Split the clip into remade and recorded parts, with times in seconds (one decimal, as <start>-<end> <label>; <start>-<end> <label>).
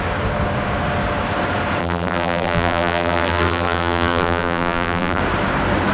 0.0-1.8 recorded; 1.8-5.2 remade; 5.2-5.9 recorded